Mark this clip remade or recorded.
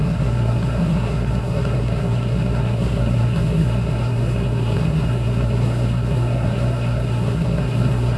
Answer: remade